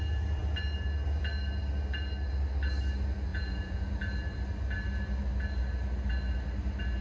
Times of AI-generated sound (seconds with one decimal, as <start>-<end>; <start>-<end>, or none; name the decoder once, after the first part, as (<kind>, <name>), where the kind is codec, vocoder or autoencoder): 3.3-3.9 (vocoder, Vocos)